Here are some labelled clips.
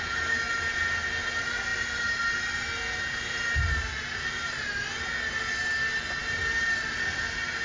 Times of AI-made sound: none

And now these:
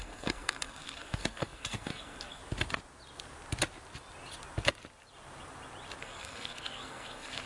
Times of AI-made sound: 0.0-2.4 (codec, SNAC); 6.0-7.5